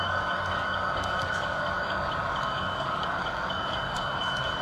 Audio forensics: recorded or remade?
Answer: remade